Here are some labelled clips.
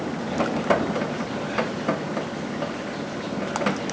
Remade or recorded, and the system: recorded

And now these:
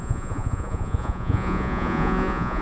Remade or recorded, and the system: remade, vocoder, Vocos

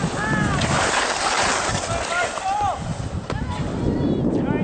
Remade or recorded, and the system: recorded